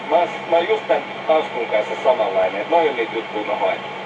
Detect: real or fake real